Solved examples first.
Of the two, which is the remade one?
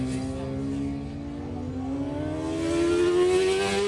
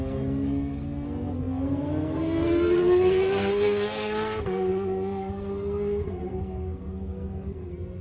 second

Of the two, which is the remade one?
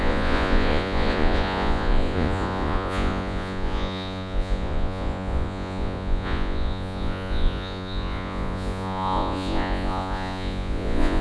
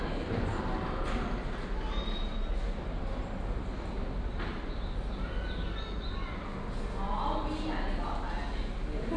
first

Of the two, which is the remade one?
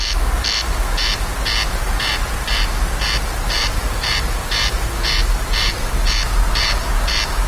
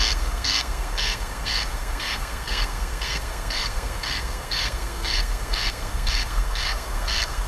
second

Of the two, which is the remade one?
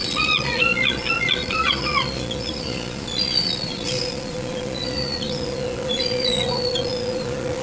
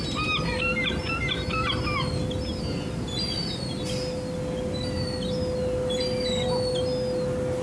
first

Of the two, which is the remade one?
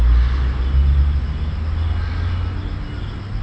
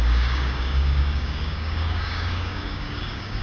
second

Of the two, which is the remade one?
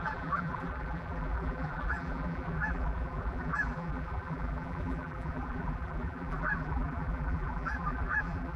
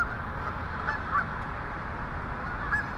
first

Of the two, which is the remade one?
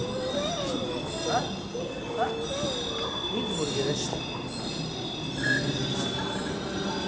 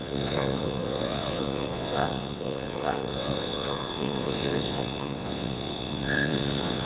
second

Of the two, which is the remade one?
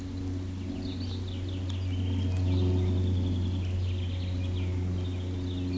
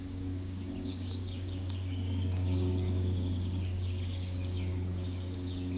second